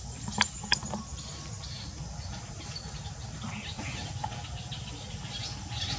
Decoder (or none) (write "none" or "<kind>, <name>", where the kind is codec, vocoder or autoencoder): none